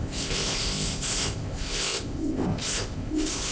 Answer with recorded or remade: remade